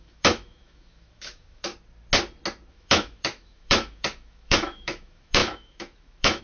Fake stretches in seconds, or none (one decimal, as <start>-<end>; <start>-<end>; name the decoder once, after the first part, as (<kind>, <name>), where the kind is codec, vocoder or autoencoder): 0.0-1.7 (autoencoder, DAC-VAE); 2.7-6.4